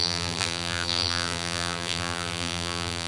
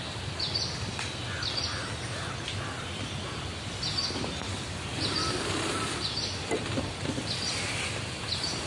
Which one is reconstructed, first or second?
first